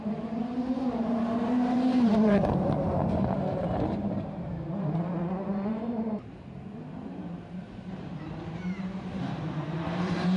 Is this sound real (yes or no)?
no